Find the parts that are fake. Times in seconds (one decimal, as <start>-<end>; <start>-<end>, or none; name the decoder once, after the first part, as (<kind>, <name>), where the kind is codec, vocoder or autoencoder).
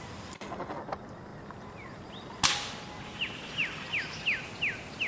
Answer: none